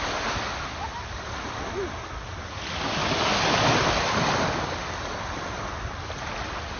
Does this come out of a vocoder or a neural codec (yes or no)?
no